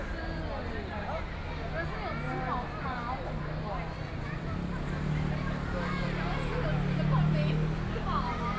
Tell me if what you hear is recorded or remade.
recorded